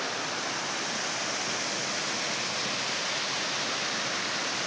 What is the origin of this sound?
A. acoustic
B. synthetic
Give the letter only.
A